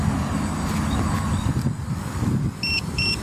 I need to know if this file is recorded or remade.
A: recorded